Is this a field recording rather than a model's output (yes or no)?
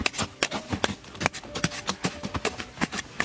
yes